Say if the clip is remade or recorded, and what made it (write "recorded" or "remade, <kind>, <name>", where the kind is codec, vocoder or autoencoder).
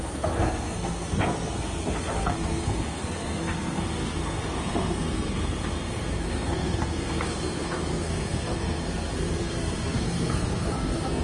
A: remade, codec, SNAC